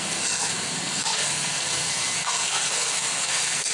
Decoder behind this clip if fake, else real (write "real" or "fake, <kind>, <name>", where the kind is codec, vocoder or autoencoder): fake, codec, SNAC